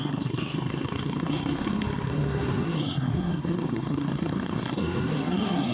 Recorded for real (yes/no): no